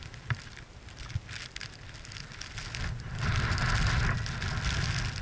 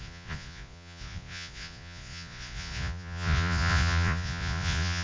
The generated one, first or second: second